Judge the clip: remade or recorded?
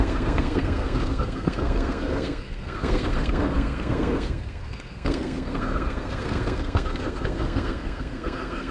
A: remade